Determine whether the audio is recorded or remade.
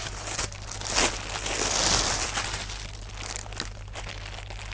recorded